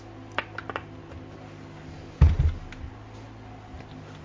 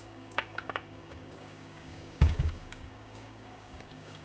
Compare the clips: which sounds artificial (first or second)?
second